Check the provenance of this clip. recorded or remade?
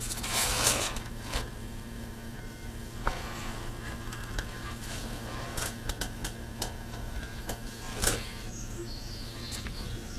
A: remade